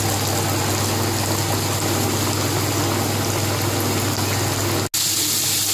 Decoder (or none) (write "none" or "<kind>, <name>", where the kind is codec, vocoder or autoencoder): none